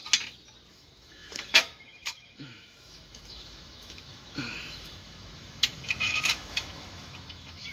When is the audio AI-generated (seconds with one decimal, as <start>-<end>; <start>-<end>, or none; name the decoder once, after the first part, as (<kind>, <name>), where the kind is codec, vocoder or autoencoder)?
0.7-7.7 (autoencoder, DAC-VAE)